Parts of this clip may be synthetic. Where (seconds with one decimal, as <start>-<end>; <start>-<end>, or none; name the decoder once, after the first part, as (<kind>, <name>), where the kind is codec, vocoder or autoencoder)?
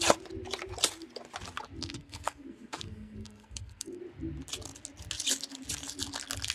1.8-4.0 (codec, SNAC)